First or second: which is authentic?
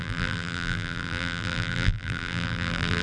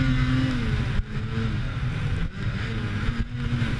second